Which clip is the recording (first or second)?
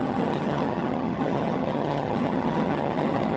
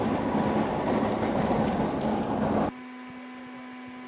second